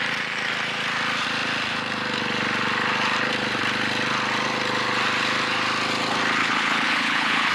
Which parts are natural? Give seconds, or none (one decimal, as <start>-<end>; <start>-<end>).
0.0-6.4

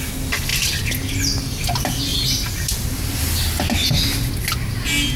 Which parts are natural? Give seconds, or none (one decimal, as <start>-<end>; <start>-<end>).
0.0-2.1; 3.2-5.2

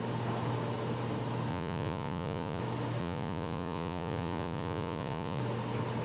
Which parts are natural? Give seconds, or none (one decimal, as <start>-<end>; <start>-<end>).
0.0-1.5; 2.6-3.0; 5.4-6.0

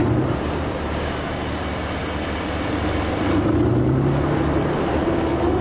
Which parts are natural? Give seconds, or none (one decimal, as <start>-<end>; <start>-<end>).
1.0-5.6

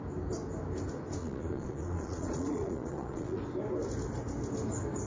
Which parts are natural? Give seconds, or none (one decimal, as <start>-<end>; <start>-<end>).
0.0-1.2; 3.4-5.1

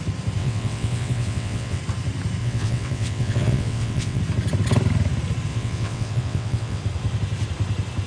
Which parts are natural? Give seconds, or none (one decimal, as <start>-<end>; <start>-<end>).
0.0-0.4; 1.8-2.4; 4.2-5.5; 6.8-8.1

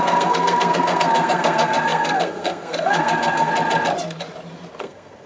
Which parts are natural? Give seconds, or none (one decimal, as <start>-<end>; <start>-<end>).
3.5-4.8

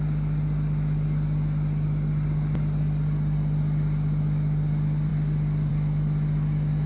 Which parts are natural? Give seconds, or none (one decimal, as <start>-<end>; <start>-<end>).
0.0-6.9